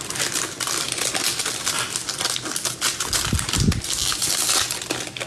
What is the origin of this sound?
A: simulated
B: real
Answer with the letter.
B